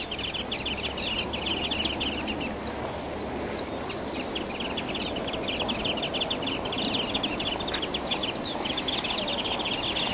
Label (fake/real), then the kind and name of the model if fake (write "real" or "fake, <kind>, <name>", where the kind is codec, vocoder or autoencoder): real